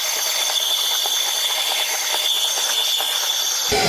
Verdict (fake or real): real